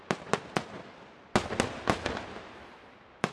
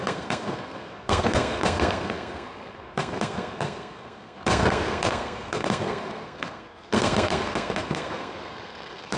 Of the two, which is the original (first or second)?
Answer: first